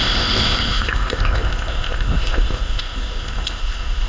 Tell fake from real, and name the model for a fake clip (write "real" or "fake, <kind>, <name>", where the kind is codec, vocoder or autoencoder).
fake, codec, ZipCodec